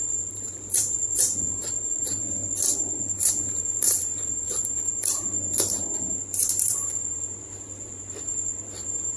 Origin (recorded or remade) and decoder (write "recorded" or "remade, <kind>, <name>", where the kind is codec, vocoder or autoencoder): remade, vocoder, BigVGAN v2